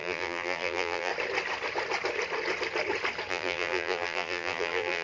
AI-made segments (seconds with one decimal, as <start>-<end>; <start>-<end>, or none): 0.0-1.1; 3.3-5.0